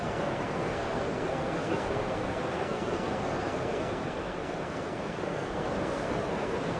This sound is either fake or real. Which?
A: fake